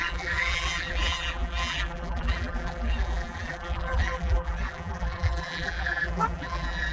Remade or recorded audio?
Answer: remade